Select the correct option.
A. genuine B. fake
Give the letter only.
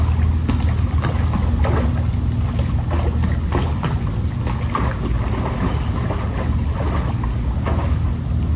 A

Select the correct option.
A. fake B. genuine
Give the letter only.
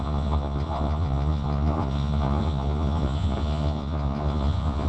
A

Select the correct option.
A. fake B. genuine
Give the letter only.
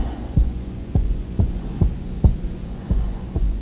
A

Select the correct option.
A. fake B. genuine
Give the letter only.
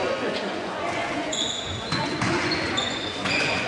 A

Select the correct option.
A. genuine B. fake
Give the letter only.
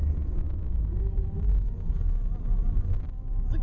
A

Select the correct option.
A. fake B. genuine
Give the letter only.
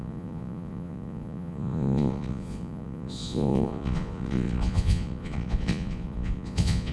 A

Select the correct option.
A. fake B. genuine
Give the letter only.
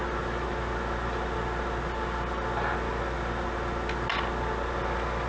B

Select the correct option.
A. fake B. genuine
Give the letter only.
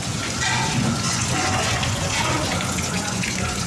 A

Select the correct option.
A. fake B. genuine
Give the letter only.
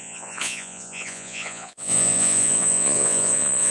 A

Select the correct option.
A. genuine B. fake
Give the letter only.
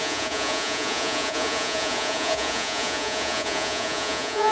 B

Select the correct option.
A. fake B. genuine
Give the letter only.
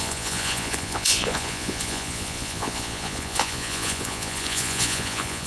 A